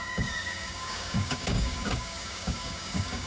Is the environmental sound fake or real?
fake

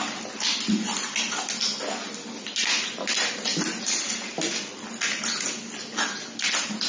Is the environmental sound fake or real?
real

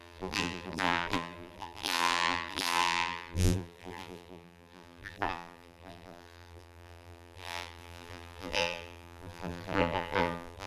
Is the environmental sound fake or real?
fake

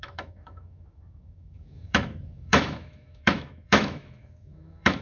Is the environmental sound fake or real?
fake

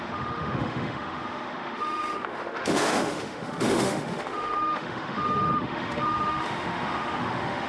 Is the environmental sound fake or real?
fake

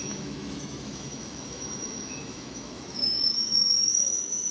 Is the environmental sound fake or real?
fake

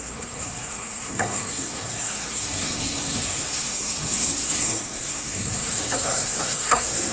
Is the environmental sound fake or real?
fake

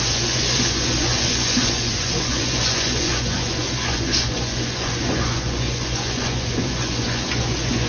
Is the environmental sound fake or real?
fake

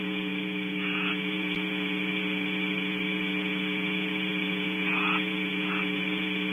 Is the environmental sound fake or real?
fake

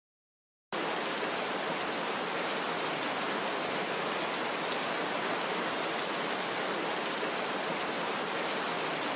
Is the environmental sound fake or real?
real